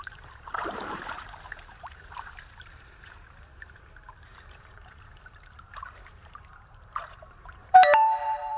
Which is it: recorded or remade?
remade